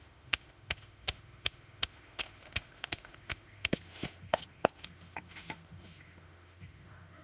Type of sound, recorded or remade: remade